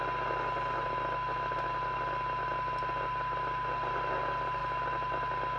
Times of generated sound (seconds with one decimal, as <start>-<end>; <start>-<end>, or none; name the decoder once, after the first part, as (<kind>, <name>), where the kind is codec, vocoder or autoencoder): none